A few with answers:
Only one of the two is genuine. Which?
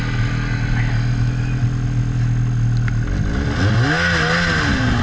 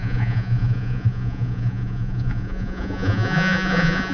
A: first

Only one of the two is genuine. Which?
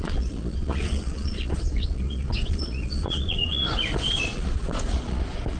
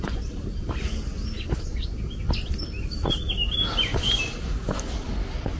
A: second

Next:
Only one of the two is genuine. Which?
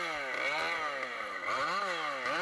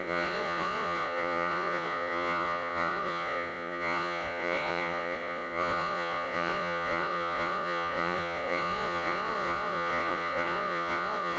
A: first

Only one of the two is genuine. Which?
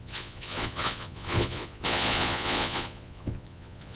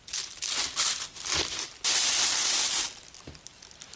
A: second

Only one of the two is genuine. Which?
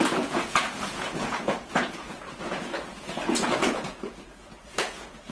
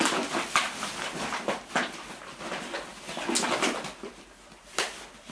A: second